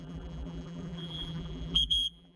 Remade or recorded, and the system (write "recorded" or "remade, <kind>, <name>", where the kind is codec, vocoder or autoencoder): remade, vocoder, BigVGAN v2